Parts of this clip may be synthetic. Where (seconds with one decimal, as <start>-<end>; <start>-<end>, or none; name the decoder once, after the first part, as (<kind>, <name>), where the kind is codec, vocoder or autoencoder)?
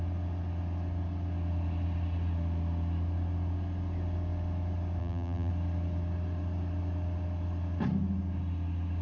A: 5.0-5.5 (vocoder, BigVGAN v2)